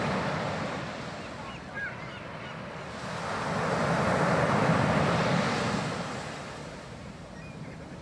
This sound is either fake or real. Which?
real